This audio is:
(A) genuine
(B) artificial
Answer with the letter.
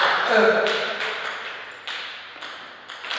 A